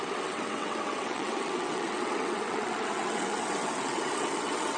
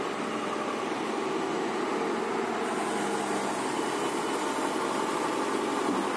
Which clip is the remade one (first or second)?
first